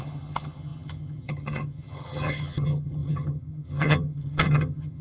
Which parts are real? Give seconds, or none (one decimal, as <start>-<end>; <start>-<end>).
none